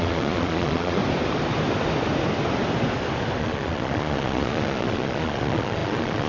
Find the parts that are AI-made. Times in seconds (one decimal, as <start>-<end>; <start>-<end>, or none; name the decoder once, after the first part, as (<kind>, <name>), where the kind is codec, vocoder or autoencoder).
0.0-1.0 (vocoder, Vocos); 3.4-6.3